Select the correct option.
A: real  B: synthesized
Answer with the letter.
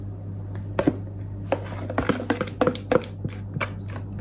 A